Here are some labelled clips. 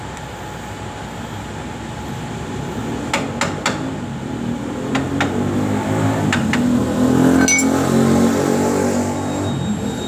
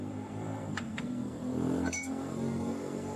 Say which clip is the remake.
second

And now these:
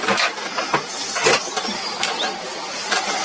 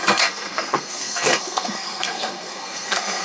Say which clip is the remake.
second